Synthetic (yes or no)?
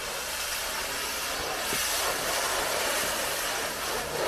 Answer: no